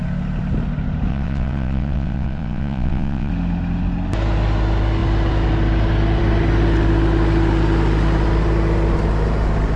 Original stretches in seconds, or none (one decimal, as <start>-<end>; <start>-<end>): 0.0-1.1; 3.3-9.8

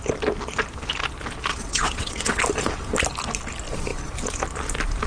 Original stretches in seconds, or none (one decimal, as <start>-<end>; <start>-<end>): 0.0-1.5; 2.4-5.1

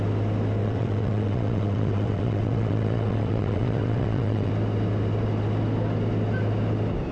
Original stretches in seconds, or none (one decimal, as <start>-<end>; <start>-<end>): 0.0-0.6; 4.5-7.1

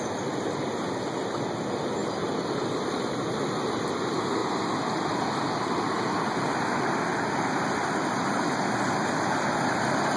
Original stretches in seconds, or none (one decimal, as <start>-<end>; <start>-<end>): 0.0-10.2

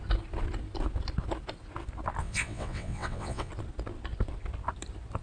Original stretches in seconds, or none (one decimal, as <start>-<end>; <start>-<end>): 0.0-2.2; 3.5-5.2

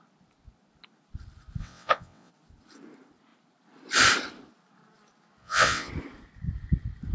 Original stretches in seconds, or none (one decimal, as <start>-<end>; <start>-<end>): 0.0-1.6; 2.3-5.4; 5.9-7.1

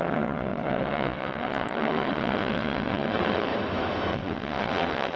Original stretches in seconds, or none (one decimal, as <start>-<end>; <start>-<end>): 3.5-4.1